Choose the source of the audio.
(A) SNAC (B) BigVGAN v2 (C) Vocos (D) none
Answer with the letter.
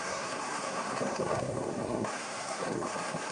A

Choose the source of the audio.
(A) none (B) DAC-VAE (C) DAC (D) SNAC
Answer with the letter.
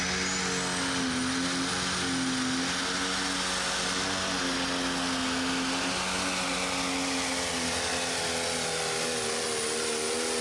A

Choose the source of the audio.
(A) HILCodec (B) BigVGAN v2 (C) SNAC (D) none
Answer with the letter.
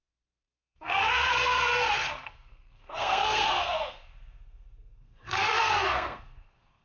C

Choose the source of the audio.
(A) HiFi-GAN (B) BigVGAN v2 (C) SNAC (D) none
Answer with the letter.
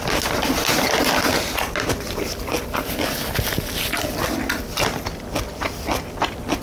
D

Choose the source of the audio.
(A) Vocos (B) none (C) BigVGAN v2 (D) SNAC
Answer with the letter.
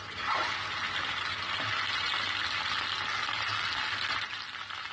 B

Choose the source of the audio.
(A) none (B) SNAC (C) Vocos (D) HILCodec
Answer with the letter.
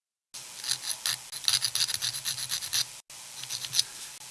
A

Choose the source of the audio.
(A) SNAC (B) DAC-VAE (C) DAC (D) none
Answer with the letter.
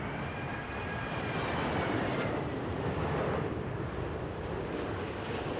D